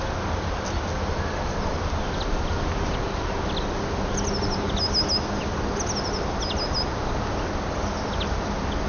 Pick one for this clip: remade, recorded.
recorded